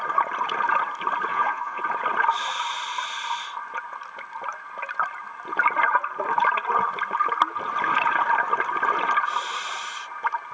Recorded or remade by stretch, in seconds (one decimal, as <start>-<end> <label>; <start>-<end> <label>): 0.0-1.3 recorded; 1.3-1.8 remade; 1.8-10.5 recorded